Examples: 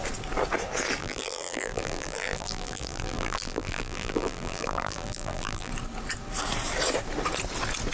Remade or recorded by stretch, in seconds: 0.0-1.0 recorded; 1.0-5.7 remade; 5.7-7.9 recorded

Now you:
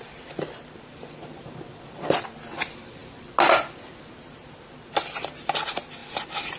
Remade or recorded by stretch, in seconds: 0.0-6.6 recorded

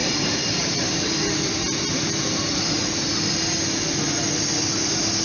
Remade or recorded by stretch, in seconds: 0.0-3.1 remade; 3.1-5.2 recorded

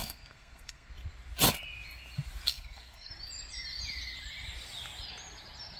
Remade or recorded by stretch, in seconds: 0.0-0.9 remade; 0.9-2.5 recorded; 2.5-3.1 remade; 3.1-5.8 recorded